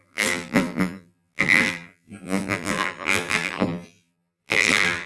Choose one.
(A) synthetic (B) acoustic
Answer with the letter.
A